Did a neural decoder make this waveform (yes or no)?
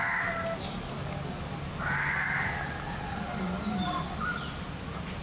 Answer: no